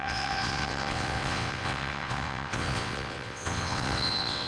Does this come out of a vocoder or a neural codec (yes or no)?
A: yes